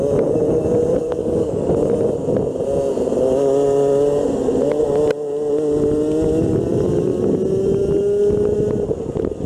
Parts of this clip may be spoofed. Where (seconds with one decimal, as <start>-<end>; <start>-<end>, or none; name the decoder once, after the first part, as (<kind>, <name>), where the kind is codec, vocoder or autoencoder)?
1.2-1.7 (codec, DAC)